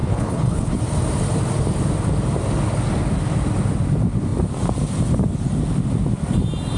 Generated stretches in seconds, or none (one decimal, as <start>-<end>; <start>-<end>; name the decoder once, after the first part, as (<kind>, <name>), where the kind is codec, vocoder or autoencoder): 0.0-0.8 (codec, HILCodec)